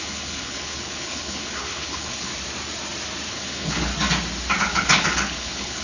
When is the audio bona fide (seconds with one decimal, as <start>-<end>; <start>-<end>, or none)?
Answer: 2.3-3.3; 3.9-4.6